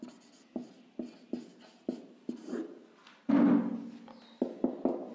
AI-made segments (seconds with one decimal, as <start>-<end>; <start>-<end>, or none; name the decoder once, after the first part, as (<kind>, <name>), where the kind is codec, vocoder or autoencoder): 1.5-3.3 (vocoder, BigVGAN v2)